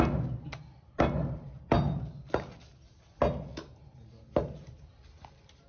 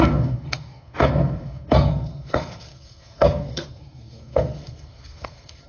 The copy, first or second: second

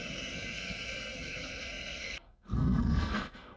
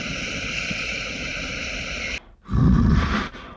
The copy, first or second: first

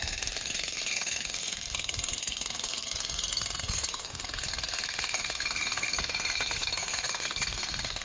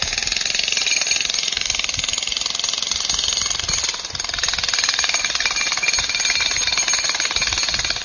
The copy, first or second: first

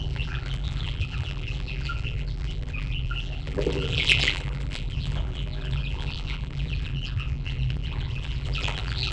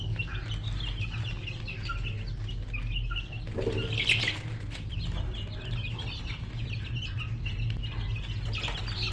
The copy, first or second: first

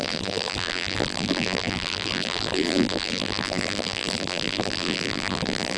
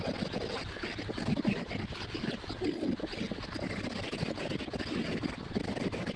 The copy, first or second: first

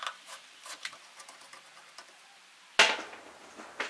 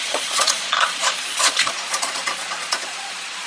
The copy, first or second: second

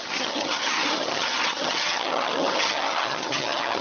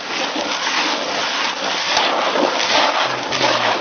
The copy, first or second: first